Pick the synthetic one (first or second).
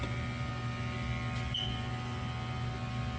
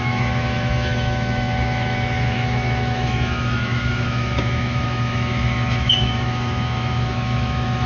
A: second